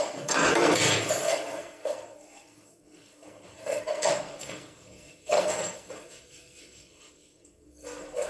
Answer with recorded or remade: remade